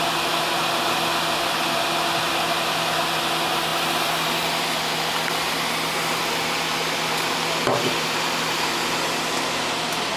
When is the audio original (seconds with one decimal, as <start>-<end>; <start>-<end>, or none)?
0.0-10.2

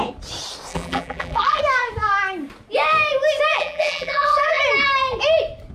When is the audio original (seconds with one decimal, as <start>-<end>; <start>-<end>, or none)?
0.0-0.7; 1.6-3.5; 4.6-5.7

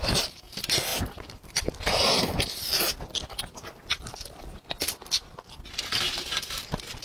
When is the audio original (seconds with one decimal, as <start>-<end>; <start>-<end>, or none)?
0.0-0.9; 2.8-7.0

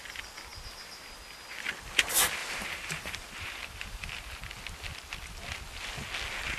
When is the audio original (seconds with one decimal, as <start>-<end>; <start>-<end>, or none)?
0.0-2.4; 4.5-6.6

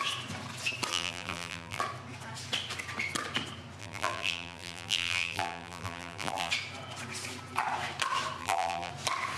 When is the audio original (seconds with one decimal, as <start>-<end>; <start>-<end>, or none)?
0.0-0.9; 1.8-3.8; 6.5-8.4; 8.9-9.4